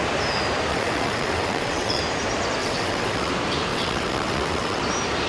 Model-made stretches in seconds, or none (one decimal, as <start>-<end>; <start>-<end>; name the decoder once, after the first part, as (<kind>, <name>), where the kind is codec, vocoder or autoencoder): 0.7-2.0 (vocoder, WaveNeXt); 2.6-3.3; 3.7-4.8